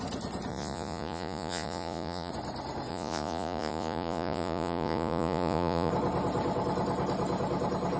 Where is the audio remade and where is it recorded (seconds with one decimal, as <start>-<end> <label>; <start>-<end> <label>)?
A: 0.0-0.5 recorded; 0.5-2.3 remade; 2.3-2.9 recorded; 2.9-5.9 remade; 5.9-8.0 recorded